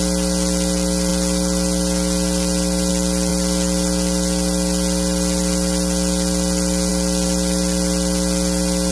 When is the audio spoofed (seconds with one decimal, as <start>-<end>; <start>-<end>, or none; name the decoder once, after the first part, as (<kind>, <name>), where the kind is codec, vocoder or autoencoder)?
none